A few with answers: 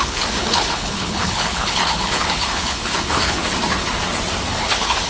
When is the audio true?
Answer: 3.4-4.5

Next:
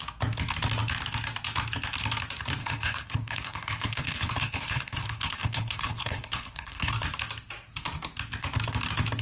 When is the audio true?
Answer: 0.0-2.6; 6.9-9.2

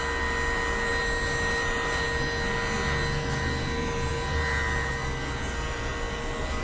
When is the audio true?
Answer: 0.0-6.6

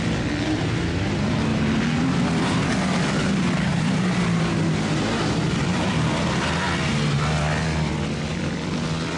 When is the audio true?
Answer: 0.0-9.2